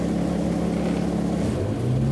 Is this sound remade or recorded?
recorded